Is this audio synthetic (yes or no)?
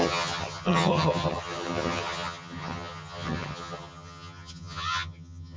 yes